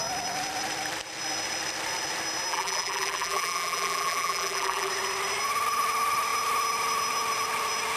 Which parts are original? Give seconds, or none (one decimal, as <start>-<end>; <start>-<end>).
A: 0.0-2.5; 4.9-8.0